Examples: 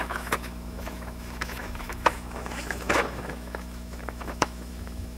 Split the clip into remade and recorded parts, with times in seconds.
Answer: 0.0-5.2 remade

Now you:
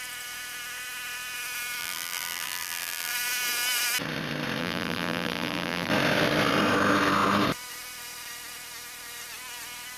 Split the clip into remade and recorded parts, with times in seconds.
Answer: 0.0-1.8 recorded; 1.8-3.1 remade; 3.1-4.6 recorded; 4.6-5.9 remade; 5.9-10.0 recorded

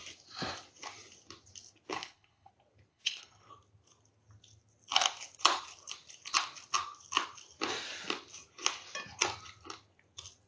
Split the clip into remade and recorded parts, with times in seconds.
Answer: 0.0-1.9 recorded; 1.9-2.5 remade; 2.5-2.9 recorded; 2.9-3.5 remade; 3.5-10.5 recorded

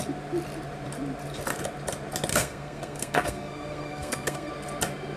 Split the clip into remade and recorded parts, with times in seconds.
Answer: 0.0-2.3 recorded; 2.3-4.5 remade; 4.5-5.2 recorded